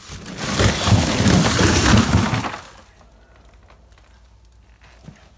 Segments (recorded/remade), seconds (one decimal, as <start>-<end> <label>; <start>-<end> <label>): 0.0-5.4 recorded